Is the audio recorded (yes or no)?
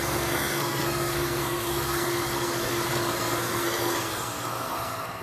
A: no